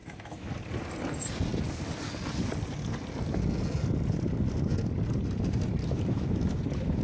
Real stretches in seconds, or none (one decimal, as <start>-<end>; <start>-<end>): 0.6-5.8